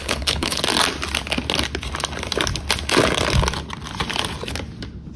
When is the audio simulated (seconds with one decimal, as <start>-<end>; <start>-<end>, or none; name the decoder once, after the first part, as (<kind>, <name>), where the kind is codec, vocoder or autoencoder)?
0.0-0.6 (codec, HILCodec)